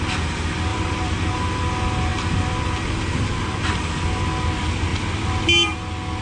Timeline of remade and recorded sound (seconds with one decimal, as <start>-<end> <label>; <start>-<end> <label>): 0.0-0.7 recorded; 0.7-1.3 remade; 1.3-2.1 recorded; 2.1-3.3 remade; 3.3-6.2 recorded